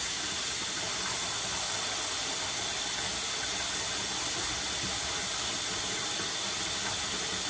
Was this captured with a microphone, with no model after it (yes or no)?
yes